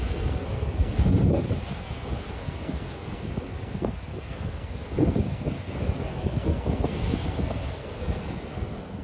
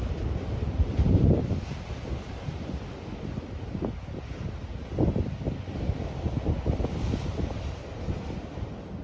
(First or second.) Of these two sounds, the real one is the second